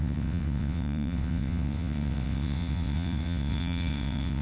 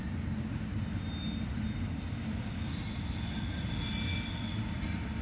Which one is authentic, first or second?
second